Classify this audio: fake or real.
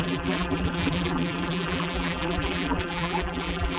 fake